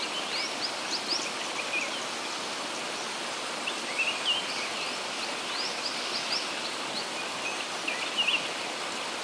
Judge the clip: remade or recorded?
recorded